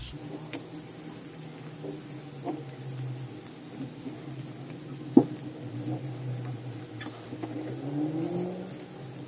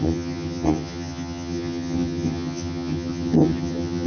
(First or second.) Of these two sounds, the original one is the first